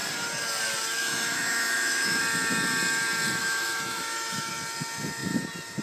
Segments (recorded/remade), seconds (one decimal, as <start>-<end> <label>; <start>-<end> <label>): 0.0-1.0 recorded; 1.0-2.2 remade; 2.2-3.4 recorded; 3.4-4.5 remade; 4.5-5.8 recorded